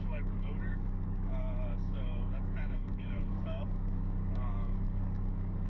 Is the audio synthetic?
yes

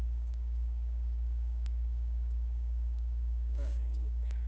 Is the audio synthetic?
yes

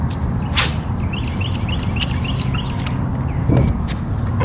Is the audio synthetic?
no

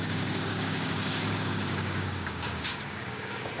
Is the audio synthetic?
yes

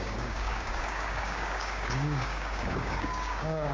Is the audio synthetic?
yes